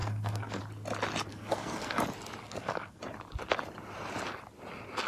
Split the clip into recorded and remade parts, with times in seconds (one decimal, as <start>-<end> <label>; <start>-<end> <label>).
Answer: 0.0-0.6 remade; 0.6-1.3 recorded; 1.3-2.0 remade; 2.0-2.4 recorded; 2.4-3.0 remade; 3.0-5.1 recorded

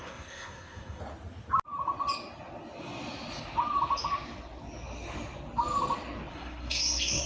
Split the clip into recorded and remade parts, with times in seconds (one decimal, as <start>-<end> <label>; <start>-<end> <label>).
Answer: 0.0-1.0 remade; 1.0-6.3 recorded; 6.3-7.3 remade

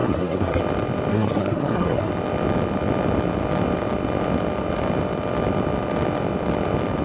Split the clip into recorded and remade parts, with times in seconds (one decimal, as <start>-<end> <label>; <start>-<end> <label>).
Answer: 0.0-0.6 remade; 0.6-1.1 recorded; 1.1-2.1 remade; 2.1-7.0 recorded

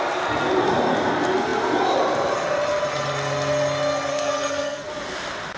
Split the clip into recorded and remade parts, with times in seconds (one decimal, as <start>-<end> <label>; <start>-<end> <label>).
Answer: 0.0-4.1 recorded; 4.1-4.9 remade; 4.9-5.6 recorded